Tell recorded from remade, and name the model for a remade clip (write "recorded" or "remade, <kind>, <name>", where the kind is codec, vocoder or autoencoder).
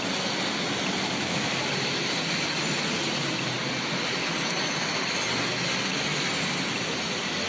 recorded